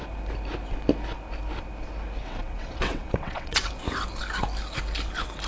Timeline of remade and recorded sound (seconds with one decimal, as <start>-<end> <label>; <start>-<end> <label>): 0.0-2.2 recorded; 2.2-3.7 remade; 3.7-5.5 recorded